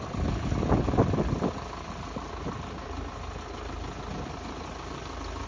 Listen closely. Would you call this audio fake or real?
real